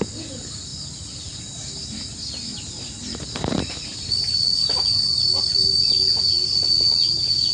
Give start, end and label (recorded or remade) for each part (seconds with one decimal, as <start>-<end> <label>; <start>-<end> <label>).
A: 0.0-7.5 recorded